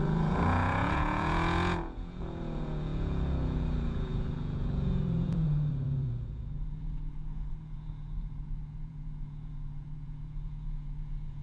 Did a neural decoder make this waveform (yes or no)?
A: yes